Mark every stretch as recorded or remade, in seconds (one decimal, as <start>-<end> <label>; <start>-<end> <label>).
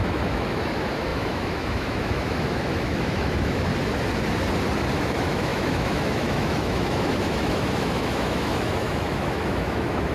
0.0-3.7 remade; 3.7-4.9 recorded; 4.9-10.1 remade